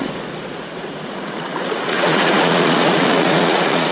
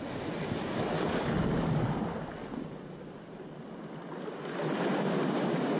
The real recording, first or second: second